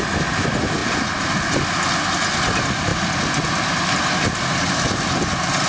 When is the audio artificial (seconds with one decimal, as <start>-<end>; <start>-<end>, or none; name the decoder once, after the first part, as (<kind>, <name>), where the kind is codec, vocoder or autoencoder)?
none